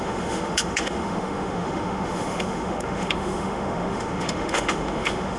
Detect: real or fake fake